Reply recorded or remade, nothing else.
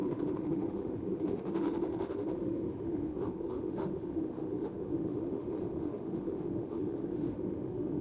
remade